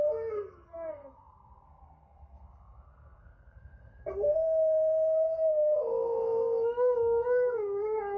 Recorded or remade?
remade